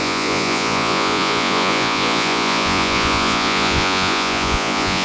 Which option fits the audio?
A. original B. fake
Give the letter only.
B